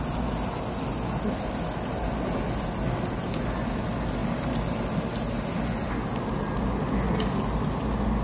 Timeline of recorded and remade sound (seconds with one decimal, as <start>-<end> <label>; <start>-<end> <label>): 0.0-8.2 recorded